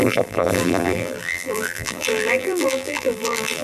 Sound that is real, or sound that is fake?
fake